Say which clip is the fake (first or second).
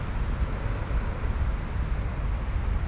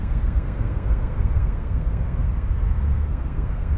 second